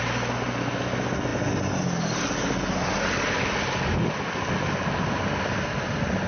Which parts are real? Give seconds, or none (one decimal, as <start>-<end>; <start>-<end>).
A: 0.0-6.3